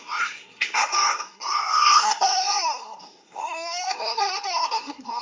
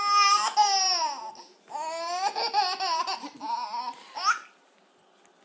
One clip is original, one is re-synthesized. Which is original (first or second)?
second